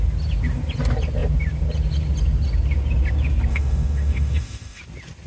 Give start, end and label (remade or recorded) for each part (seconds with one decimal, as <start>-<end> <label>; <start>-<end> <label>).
0.0-3.5 recorded; 3.5-4.8 remade; 4.8-5.3 recorded